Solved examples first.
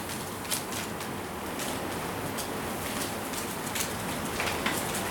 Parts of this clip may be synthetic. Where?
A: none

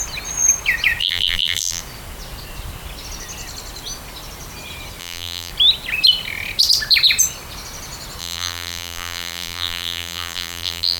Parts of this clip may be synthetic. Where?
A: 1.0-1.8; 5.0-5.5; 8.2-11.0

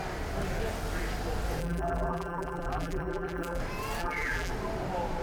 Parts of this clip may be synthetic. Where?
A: 1.6-3.6; 4.0-4.5